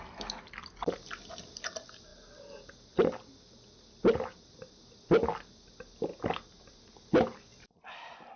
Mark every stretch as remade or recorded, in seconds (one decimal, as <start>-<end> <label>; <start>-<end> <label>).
0.0-6.1 recorded; 6.1-7.1 remade; 7.1-7.5 recorded; 7.5-8.4 remade